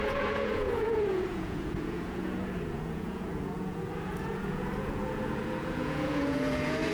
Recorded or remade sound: remade